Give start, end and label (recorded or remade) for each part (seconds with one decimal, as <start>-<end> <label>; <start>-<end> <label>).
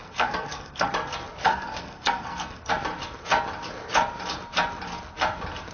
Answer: 0.0-0.9 remade; 0.9-1.4 recorded; 1.4-2.7 remade; 2.7-5.7 recorded